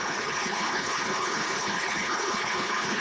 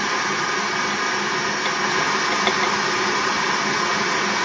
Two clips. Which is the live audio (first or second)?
second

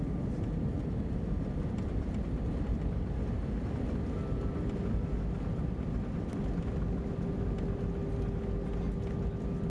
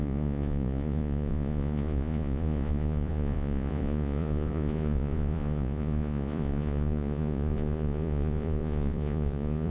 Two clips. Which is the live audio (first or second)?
first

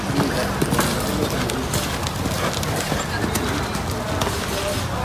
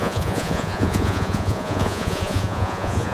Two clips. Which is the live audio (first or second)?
first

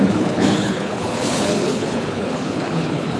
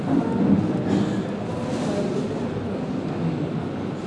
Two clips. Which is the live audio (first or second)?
second